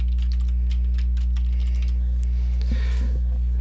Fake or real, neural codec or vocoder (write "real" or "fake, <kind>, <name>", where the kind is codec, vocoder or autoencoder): real